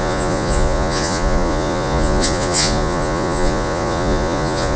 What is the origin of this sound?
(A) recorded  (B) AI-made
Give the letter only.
B